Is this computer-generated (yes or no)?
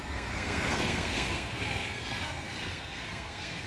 yes